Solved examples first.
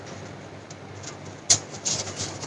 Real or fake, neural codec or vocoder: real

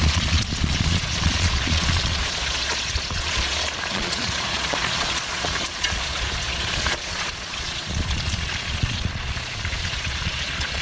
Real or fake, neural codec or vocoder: fake, vocoder, Vocos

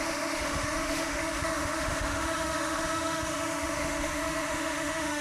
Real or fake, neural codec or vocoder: fake, autoencoder, DAC-VAE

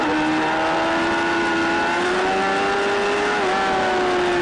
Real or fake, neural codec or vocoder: real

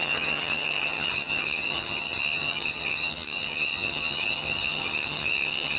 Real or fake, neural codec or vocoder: fake, vocoder, HiFi-GAN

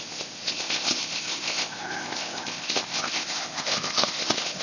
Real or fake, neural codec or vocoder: fake, codec, ZipCodec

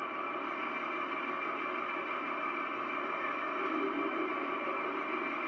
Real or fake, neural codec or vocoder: real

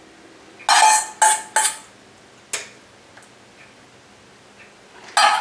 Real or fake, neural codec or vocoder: real